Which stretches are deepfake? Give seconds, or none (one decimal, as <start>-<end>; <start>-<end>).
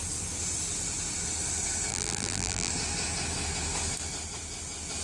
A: 1.9-2.7